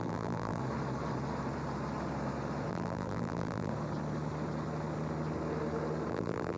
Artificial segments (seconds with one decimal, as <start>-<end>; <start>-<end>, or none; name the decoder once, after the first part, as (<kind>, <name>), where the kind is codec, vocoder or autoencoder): 0.0-0.6 (vocoder, BigVGAN v2); 2.7-3.7; 6.1-6.6